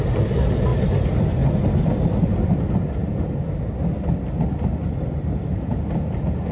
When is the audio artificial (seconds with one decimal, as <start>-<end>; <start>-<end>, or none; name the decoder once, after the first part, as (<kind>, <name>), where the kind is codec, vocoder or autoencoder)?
none